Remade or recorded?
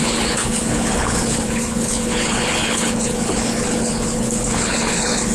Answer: remade